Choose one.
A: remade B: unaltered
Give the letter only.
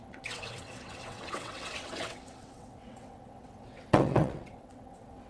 A